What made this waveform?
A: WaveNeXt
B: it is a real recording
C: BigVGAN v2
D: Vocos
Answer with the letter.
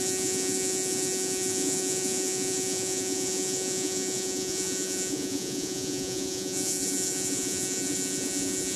D